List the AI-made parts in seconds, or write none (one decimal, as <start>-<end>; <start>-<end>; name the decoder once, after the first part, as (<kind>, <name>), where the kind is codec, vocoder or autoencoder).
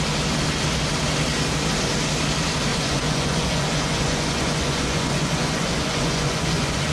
2.7-6.9 (vocoder, Vocos)